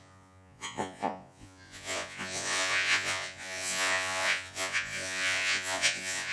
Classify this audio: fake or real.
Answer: fake